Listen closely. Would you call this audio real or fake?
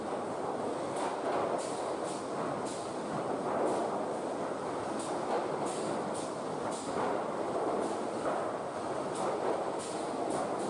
real